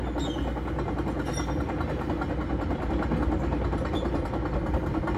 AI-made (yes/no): no